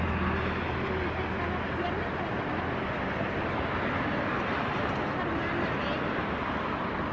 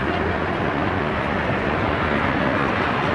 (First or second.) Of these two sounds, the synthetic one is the second